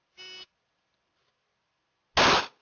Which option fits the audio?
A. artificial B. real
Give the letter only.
B